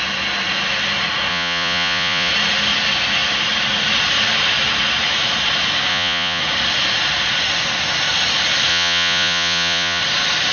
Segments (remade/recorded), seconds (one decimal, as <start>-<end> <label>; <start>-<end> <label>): 0.0-1.3 recorded; 1.3-2.3 remade; 2.3-5.9 recorded; 5.9-6.4 remade; 6.4-8.7 recorded; 8.7-10.0 remade; 10.0-10.5 recorded